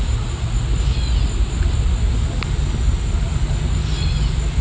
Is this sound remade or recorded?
recorded